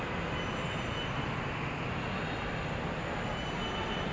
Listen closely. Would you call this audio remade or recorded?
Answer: recorded